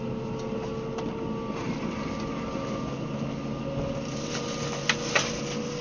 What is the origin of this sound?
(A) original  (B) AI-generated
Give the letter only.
A